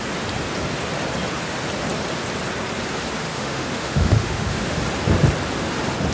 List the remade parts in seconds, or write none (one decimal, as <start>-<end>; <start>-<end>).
3.3-4.8

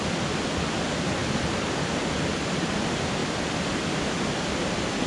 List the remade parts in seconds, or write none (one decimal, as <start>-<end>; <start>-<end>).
none